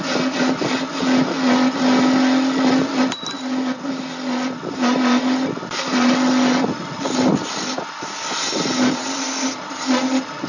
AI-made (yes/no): no